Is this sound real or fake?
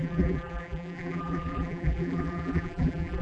fake